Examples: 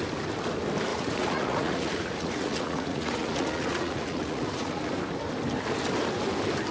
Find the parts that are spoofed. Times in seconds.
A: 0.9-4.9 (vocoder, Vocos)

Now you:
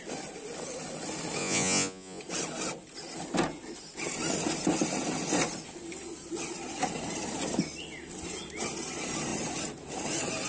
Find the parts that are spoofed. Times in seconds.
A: 1.4-2.2 (vocoder, Vocos)

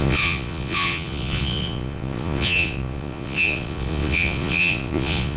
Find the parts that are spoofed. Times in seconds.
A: 0.0-5.4 (vocoder, Vocos)

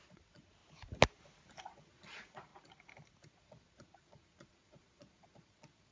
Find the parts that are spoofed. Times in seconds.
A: 0.0-0.6 (vocoder, Vocos); 1.6-2.5; 3.3-5.9